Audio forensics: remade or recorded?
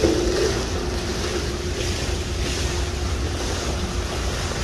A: recorded